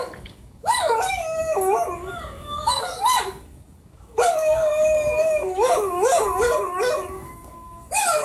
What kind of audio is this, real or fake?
fake